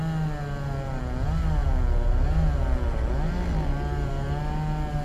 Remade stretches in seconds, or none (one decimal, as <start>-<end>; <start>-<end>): none